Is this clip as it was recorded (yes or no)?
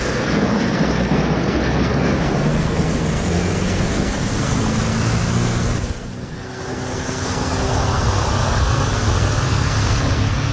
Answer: no